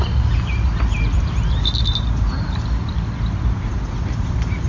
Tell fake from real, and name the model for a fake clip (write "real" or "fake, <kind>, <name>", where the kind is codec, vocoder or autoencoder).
real